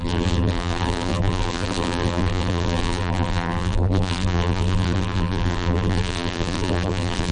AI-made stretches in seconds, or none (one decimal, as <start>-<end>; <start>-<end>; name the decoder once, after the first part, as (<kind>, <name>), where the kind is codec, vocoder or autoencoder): 0.0-7.3 (vocoder, BigVGAN v2)

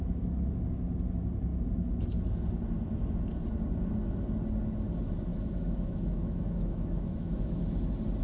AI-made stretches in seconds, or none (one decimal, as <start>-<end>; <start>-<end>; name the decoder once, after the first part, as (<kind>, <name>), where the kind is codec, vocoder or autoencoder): 5.3-7.7 (autoencoder, DAC-VAE)

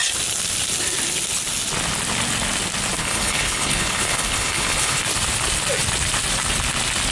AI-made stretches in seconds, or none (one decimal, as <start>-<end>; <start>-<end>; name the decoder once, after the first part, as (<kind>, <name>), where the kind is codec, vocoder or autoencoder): 3.0-5.0 (codec, HILCodec)

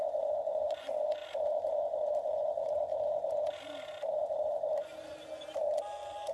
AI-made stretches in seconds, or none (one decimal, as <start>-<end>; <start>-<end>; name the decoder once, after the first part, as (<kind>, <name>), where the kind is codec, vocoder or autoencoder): 0.0-1.2 (vocoder, Vocos); 1.8-2.9; 4.1-4.9

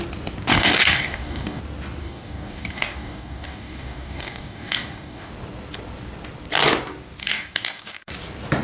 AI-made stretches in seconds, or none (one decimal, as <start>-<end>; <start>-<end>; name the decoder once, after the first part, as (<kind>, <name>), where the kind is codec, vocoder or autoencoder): 0.5-1.6 (codec, DAC); 2.0-5.3; 7.2-8.1

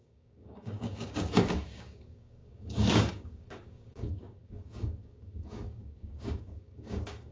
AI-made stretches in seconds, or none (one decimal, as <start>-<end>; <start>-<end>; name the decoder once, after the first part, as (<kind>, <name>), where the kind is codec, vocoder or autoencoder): 0.0-7.3 (codec, DAC)